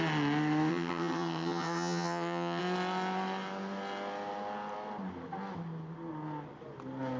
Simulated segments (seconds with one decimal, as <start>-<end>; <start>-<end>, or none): 0.7-2.6